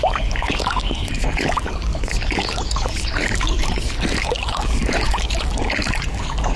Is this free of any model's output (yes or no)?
no